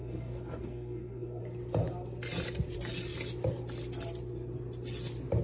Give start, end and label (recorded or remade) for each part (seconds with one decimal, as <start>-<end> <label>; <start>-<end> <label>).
0.0-1.4 remade; 1.4-5.4 recorded